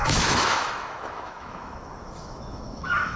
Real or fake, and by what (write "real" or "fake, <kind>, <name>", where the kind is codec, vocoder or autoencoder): fake, autoencoder, DAC-VAE